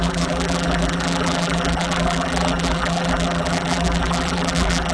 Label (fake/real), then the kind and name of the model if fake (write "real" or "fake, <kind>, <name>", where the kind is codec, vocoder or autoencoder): fake, vocoder, BigVGAN v2